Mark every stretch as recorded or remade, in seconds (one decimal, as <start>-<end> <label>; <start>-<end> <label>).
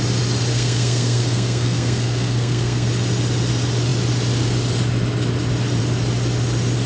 0.0-0.5 recorded; 0.5-2.9 remade; 2.9-6.9 recorded